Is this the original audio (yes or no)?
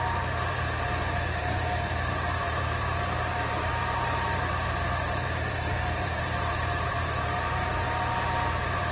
no